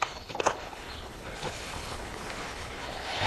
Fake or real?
fake